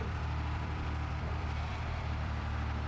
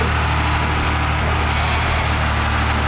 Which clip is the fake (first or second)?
first